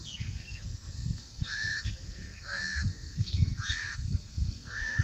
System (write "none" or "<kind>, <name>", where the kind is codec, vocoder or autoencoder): codec, SNAC